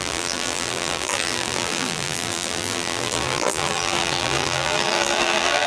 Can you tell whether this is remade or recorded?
remade